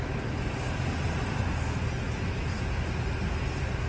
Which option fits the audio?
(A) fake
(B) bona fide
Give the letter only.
B